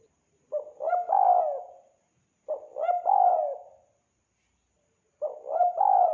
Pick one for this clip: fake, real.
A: real